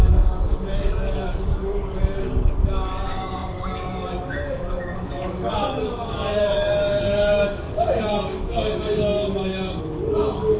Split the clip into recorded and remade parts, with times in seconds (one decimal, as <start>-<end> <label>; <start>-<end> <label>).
0.0-10.6 remade